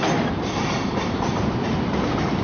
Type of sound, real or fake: real